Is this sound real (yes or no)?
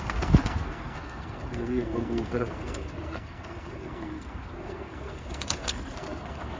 no